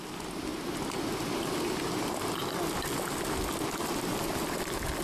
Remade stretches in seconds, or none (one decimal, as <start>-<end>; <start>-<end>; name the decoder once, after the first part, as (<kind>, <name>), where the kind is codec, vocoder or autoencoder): none